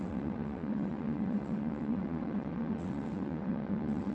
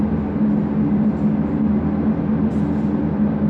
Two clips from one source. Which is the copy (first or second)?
first